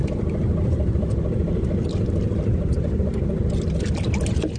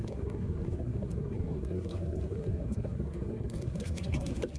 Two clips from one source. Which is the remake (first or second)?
second